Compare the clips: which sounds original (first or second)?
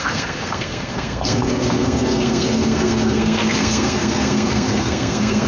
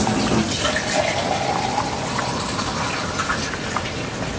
second